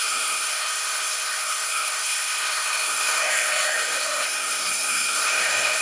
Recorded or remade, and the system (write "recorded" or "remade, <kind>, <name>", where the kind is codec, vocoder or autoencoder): remade, codec, SNAC